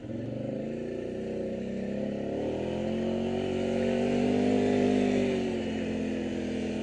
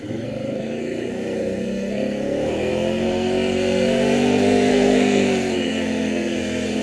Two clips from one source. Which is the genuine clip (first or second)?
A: first